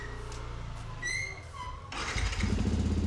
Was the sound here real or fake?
real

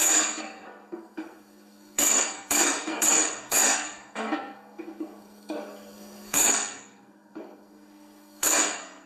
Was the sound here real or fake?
fake